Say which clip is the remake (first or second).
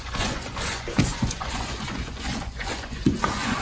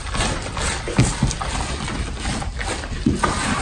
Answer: first